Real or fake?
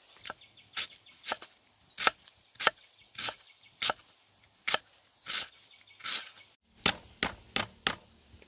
real